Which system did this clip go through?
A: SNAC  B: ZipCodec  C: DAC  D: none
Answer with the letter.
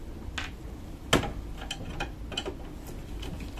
D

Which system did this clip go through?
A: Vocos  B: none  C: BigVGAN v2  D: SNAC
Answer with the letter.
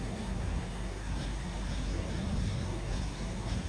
D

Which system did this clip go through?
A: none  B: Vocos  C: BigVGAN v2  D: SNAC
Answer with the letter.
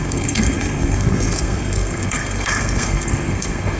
D